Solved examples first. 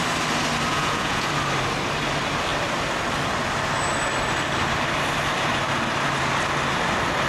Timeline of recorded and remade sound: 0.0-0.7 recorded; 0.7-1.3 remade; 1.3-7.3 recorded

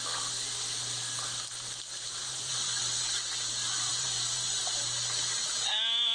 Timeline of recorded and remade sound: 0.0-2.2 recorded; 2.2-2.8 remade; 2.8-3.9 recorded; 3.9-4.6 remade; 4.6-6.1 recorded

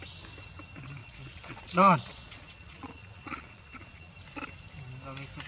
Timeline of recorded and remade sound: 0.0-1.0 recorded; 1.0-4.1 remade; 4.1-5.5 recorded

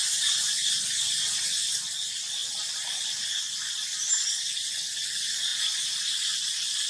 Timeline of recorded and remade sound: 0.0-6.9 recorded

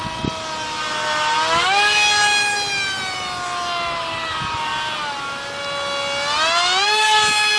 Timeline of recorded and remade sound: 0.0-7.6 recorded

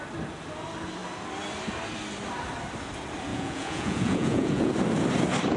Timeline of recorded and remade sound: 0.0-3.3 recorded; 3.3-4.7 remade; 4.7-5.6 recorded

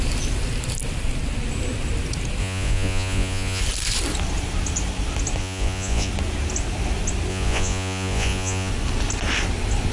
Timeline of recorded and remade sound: 0.0-2.4 recorded; 2.4-3.6 remade; 3.6-5.4 recorded; 5.4-6.1 remade; 6.1-7.3 recorded; 7.3-8.7 remade; 8.7-9.9 recorded

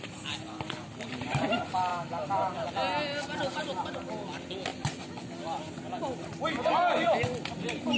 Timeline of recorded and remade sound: 0.0-4.7 recorded; 4.7-5.3 remade; 5.3-8.0 recorded